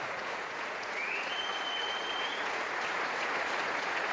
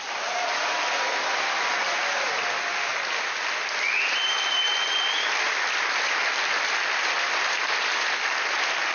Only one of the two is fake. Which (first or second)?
first